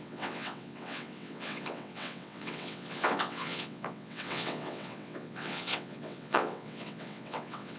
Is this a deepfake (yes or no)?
yes